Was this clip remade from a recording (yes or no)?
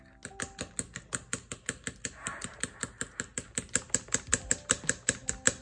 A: no